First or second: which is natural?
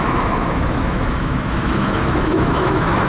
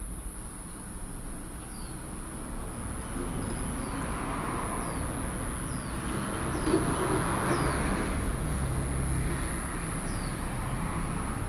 second